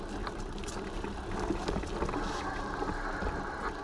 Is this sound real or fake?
real